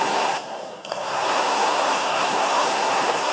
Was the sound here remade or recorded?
remade